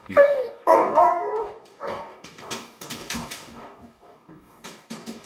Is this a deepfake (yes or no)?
yes